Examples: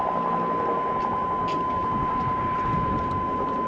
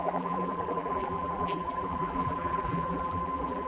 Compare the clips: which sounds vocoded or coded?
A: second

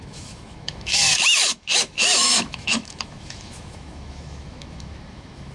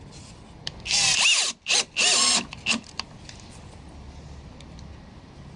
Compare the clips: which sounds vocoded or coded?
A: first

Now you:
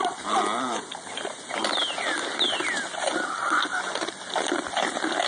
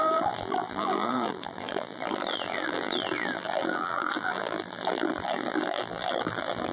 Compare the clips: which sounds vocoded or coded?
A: second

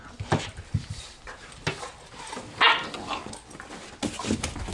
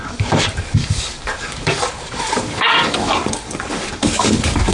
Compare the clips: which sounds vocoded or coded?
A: second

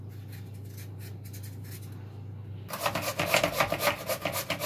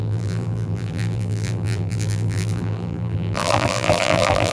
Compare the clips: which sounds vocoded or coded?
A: second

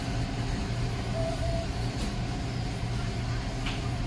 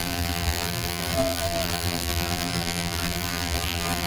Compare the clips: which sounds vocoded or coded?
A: second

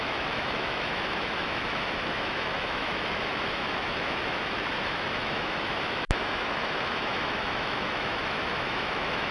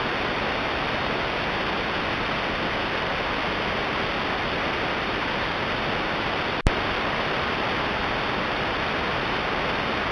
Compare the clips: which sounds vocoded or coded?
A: first